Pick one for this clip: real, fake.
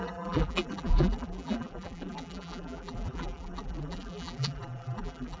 fake